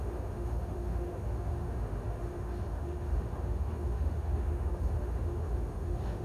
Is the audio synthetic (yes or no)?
yes